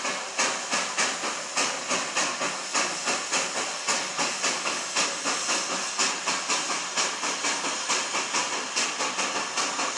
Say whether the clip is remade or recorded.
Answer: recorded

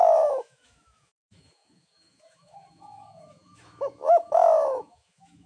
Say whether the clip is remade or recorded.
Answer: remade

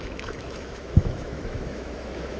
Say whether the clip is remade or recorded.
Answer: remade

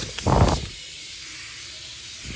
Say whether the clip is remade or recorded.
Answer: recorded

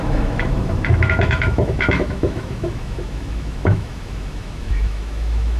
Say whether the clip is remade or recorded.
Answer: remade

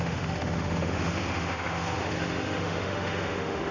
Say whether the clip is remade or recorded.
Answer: remade